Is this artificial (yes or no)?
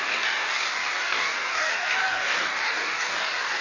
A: yes